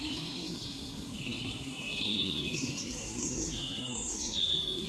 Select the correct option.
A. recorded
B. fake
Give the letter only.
B